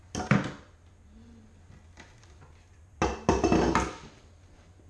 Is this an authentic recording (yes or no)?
yes